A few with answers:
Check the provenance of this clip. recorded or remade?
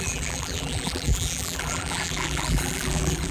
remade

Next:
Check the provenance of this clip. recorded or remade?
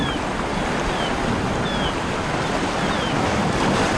recorded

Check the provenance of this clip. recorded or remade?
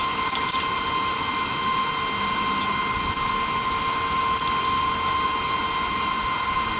recorded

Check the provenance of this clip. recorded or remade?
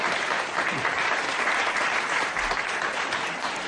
remade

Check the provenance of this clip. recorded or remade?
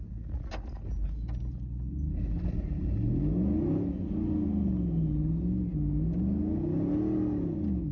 recorded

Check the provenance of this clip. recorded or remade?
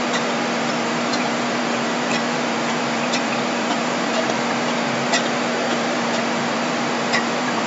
remade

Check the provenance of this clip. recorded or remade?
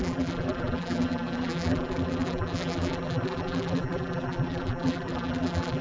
remade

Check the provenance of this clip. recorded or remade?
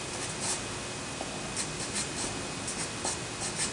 recorded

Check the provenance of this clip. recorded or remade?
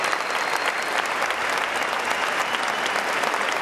recorded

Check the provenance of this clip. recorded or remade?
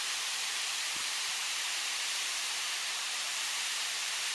remade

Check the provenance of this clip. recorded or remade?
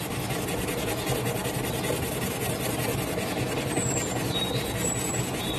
recorded